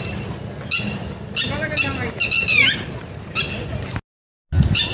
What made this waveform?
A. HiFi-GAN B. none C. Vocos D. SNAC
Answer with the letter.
B